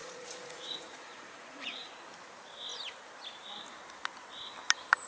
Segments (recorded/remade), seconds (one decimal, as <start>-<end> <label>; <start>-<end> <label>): 0.0-1.9 remade; 1.9-5.1 recorded